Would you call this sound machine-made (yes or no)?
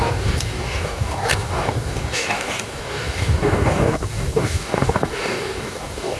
yes